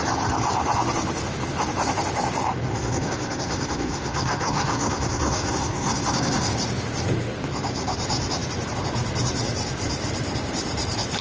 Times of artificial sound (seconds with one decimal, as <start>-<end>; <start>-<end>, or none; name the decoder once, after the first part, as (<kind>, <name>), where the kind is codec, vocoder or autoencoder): 2.7-6.5 (codec, SNAC)